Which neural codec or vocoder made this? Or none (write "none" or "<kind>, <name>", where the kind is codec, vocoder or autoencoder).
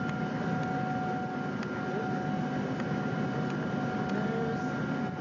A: none